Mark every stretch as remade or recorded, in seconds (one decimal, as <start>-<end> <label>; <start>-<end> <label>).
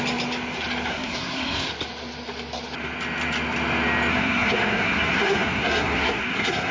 0.0-0.9 recorded; 0.9-1.7 remade; 1.7-4.1 recorded; 4.1-6.7 remade